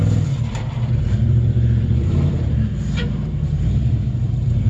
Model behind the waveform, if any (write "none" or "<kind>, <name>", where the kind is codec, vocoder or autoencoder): vocoder, BigVGAN v2